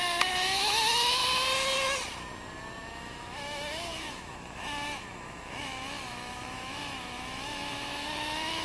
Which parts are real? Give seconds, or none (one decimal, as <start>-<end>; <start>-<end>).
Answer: 1.2-3.0